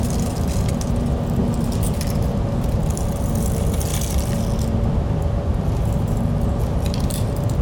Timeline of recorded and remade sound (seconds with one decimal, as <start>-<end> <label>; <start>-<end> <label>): 0.0-7.6 recorded